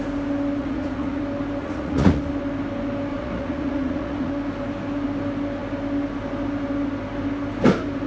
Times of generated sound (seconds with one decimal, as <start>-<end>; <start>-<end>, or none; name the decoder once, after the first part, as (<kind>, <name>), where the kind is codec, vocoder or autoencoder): 0.6-1.2 (vocoder, Vocos); 1.6-2.2; 3.1-4.3